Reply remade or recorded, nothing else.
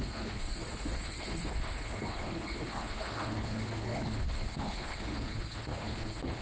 remade